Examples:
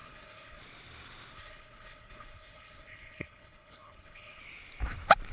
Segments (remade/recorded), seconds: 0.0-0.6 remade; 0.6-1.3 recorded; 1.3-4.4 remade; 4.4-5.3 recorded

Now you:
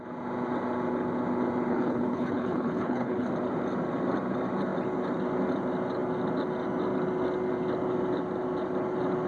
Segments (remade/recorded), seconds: 0.0-1.7 recorded; 1.7-3.3 remade; 3.3-9.3 recorded

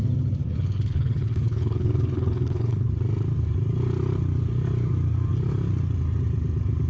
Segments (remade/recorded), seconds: 0.0-0.4 recorded; 0.4-2.9 remade; 2.9-6.9 recorded

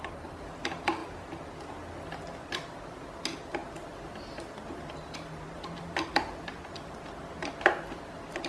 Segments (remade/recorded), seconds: 0.0-8.5 recorded

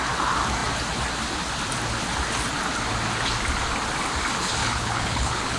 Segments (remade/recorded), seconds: 0.0-4.6 recorded; 4.6-5.6 remade

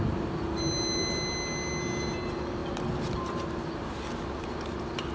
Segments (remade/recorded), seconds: 0.0-5.1 recorded

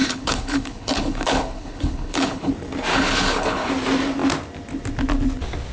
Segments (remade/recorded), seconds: 0.0-2.5 remade; 2.5-2.9 recorded; 2.9-3.7 remade; 3.7-5.7 recorded